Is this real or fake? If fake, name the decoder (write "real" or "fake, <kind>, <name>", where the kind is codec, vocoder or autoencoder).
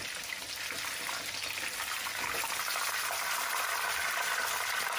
real